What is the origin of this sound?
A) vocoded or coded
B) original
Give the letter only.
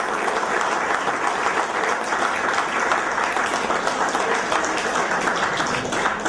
B